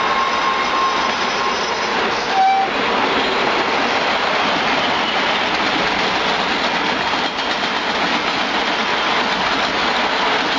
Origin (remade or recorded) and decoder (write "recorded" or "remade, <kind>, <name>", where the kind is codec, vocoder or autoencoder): recorded